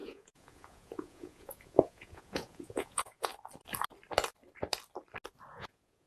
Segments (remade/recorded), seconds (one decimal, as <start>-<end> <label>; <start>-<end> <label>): 0.0-3.3 remade; 3.3-5.5 recorded; 5.5-6.1 remade